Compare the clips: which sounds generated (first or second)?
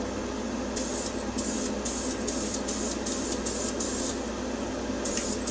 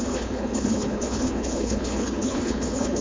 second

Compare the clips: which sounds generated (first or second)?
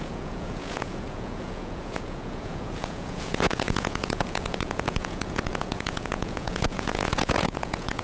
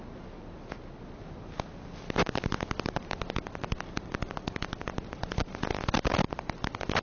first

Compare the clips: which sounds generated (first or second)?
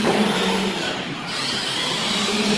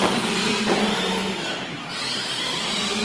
first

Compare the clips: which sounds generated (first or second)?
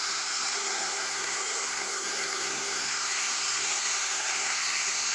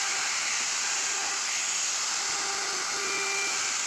first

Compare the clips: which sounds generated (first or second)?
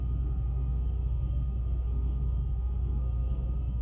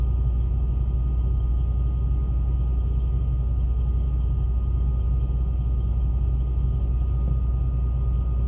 first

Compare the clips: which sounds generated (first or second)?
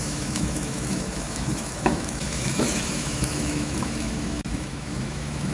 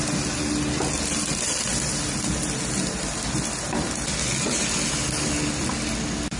first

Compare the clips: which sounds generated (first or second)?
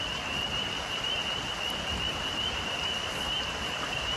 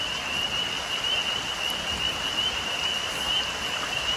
first